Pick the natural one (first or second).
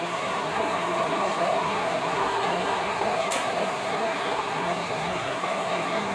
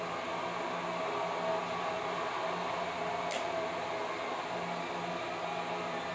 second